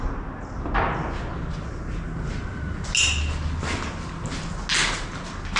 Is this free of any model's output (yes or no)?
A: yes